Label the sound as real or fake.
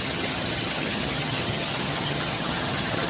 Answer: fake